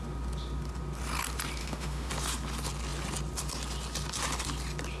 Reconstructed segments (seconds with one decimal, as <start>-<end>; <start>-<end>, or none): 1.6-2.1